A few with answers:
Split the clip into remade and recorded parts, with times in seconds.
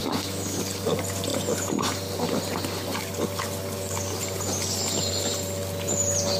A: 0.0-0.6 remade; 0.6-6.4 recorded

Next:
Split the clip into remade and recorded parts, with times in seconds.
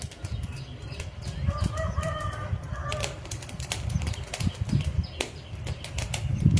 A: 0.0-6.6 recorded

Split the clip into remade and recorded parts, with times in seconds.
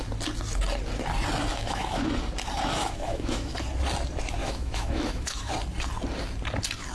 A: 0.0-1.5 recorded; 1.5-2.1 remade; 2.1-2.8 recorded; 2.8-3.5 remade; 3.5-4.4 recorded; 4.4-5.5 remade; 5.5-6.9 recorded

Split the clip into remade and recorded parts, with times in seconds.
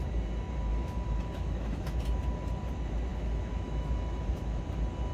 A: 0.0-0.7 recorded; 0.7-2.0 remade; 2.0-3.1 recorded; 3.1-4.6 remade; 4.6-5.1 recorded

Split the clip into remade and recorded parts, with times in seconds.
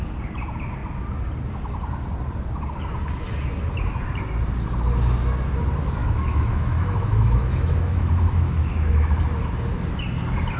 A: 0.0-6.0 recorded; 6.0-9.2 remade; 9.2-10.6 recorded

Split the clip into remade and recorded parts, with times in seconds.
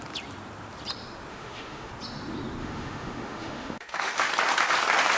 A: 0.0-1.3 recorded; 1.3-1.9 remade; 1.9-2.6 recorded; 2.6-4.3 remade; 4.3-5.2 recorded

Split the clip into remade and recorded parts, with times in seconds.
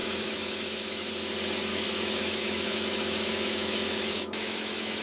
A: 0.0-1.1 remade; 1.1-1.7 recorded; 1.7-5.0 remade